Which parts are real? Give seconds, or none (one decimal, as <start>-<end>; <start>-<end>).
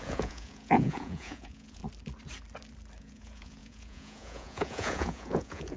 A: 1.8-3.0